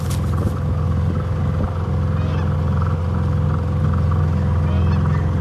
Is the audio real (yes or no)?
yes